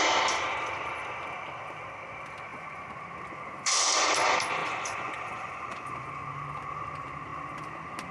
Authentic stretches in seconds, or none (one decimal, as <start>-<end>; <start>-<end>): 0.0-2.5; 3.0-4.6; 6.1-8.1